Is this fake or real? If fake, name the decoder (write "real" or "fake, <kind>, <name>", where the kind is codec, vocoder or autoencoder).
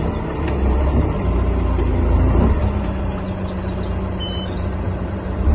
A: fake, vocoder, BigVGAN v2